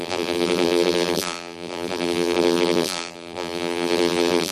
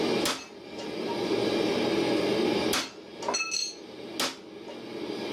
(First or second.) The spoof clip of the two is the first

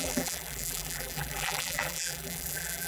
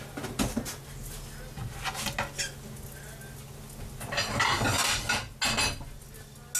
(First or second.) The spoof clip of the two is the first